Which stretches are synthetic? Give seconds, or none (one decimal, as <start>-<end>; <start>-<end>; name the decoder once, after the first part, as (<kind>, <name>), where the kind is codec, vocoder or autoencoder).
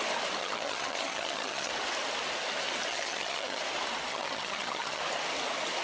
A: 0.4-1.7 (vocoder, HiFi-GAN); 2.9-3.6; 4.1-5.0